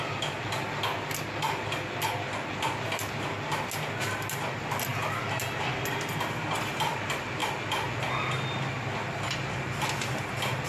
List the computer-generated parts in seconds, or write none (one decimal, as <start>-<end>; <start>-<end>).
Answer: none